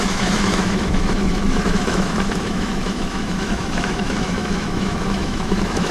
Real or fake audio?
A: fake